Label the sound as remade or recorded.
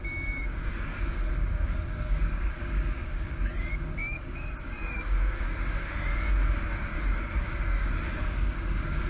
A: remade